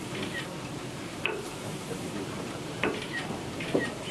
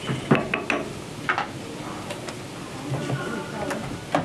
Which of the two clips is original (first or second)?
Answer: second